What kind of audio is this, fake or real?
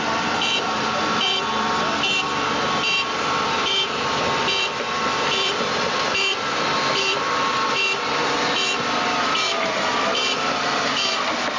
fake